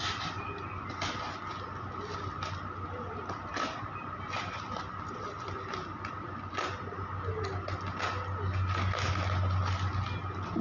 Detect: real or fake real